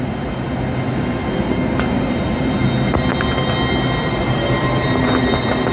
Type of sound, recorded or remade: recorded